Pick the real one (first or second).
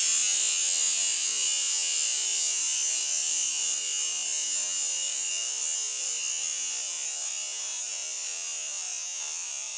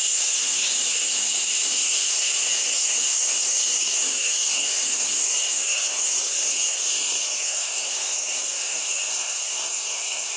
first